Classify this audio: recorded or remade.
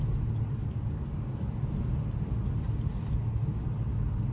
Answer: recorded